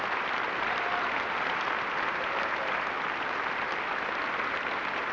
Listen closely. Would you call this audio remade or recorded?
recorded